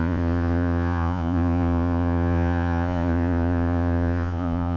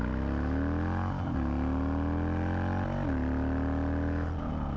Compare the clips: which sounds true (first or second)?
second